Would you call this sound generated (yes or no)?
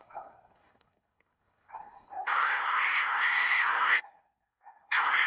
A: yes